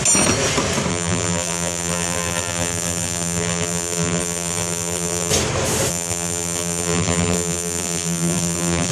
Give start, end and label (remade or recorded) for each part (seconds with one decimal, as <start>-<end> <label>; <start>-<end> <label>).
0.0-0.9 recorded; 0.9-5.3 remade; 5.3-5.9 recorded; 5.9-8.9 remade